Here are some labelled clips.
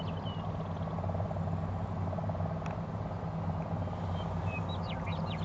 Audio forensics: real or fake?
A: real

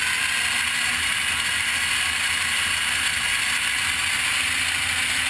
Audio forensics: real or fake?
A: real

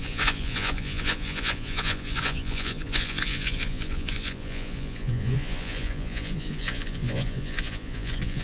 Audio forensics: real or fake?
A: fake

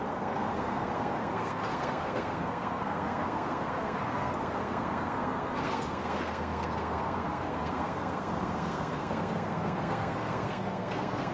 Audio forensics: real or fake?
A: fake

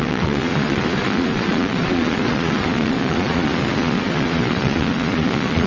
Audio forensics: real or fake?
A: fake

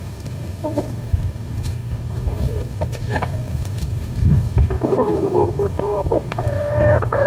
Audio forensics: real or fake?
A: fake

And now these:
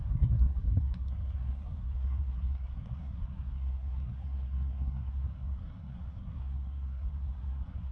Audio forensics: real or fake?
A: fake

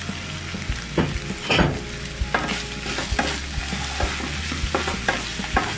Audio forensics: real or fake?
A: real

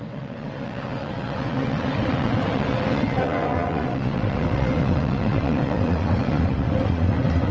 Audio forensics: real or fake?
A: fake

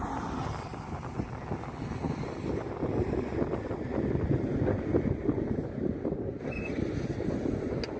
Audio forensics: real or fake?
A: real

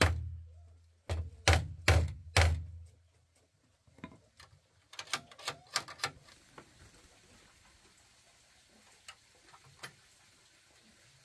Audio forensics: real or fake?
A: real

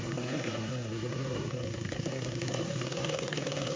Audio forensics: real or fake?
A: fake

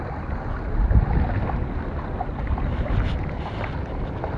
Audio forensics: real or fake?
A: real